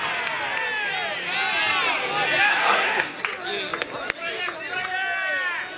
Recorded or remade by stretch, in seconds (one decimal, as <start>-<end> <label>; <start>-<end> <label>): 0.0-2.5 recorded; 2.5-3.2 remade; 3.2-5.8 recorded